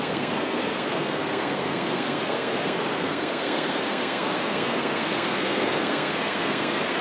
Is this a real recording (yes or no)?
no